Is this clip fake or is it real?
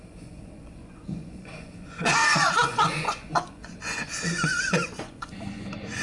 fake